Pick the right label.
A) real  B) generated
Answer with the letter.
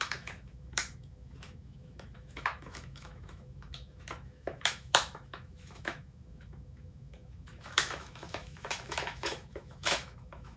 B